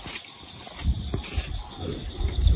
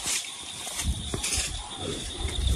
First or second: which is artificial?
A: second